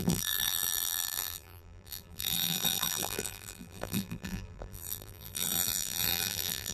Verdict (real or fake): fake